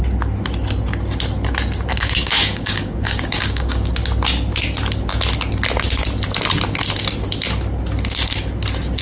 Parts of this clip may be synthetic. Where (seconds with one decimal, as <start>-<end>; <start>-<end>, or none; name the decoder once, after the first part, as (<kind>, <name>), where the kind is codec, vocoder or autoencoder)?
1.9-3.9 (codec, DAC)